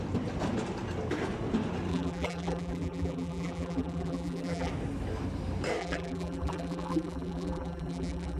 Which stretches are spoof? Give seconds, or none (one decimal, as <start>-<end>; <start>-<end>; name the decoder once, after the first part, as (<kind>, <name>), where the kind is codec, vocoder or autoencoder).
1.9-4.7 (vocoder, BigVGAN v2); 5.8-8.4